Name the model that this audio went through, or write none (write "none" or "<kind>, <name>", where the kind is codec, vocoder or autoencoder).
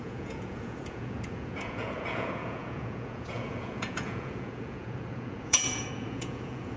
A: vocoder, Vocos